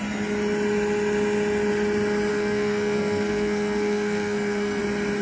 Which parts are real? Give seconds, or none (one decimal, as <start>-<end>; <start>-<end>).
0.0-2.3; 4.8-5.2